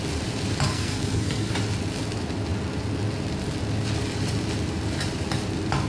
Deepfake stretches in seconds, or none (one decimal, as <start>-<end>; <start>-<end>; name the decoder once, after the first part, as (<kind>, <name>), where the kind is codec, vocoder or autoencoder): 0.7-1.5 (codec, SNAC)